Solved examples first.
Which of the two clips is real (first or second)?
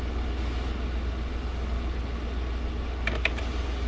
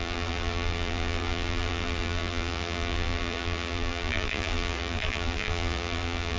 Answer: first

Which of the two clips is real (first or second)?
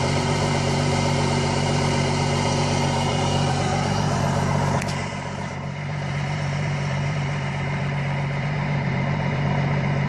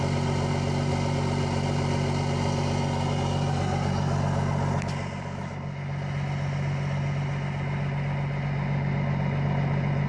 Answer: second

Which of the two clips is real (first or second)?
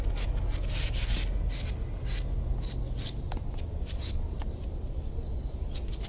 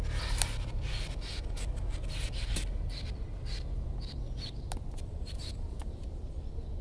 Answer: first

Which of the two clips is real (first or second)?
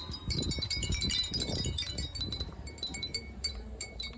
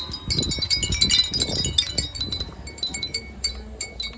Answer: second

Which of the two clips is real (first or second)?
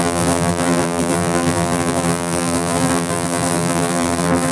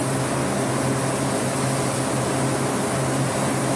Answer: second